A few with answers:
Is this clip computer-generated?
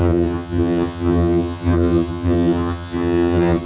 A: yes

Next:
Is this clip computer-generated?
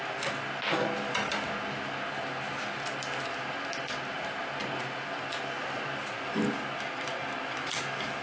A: no